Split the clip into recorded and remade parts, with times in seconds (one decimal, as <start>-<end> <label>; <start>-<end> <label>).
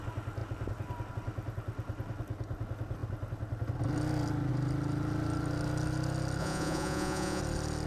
0.0-6.4 recorded; 6.4-7.4 remade; 7.4-7.9 recorded